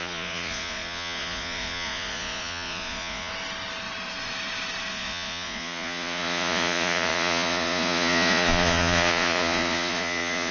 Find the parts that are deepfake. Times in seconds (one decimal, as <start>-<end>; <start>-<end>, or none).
0.0-3.3; 4.9-10.5

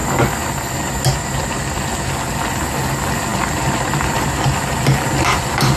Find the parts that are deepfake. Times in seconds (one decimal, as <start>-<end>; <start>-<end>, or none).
3.3-5.8

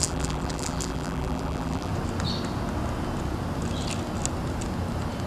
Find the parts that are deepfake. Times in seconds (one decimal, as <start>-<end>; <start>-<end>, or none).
0.0-1.9

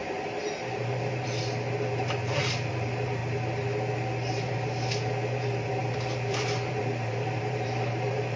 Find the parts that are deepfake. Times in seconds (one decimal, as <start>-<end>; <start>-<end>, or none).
0.0-1.4; 2.7-3.2; 4.3-8.4

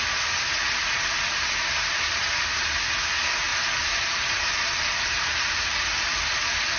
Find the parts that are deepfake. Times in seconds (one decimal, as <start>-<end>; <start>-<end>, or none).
3.5-5.9

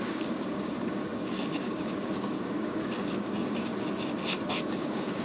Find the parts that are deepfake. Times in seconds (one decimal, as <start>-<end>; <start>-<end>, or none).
0.0-3.7; 4.5-5.2

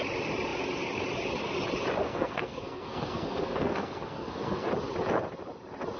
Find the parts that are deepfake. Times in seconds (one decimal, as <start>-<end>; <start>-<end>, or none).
2.0-4.7

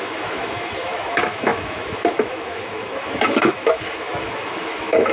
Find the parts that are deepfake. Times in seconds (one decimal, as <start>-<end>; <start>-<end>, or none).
0.0-5.1